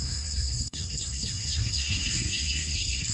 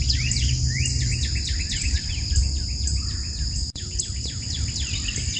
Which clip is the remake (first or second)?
first